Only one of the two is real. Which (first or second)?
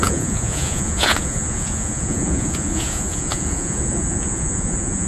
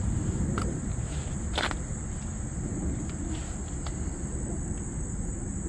second